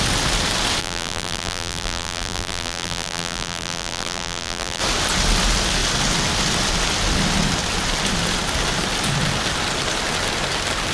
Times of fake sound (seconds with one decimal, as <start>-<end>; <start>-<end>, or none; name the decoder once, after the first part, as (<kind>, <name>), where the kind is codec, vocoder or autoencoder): 0.8-4.8 (vocoder, BigVGAN v2)